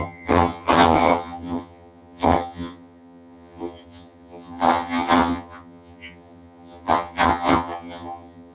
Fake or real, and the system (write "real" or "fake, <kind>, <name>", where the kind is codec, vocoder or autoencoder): fake, vocoder, HiFi-GAN